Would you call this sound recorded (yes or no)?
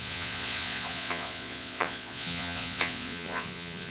no